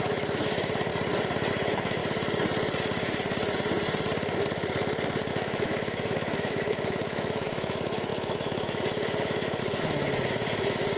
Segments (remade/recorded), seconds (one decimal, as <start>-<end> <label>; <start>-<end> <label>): 0.0-0.9 remade; 0.9-1.5 recorded; 1.5-2.0 remade; 2.0-5.3 recorded; 5.3-11.0 remade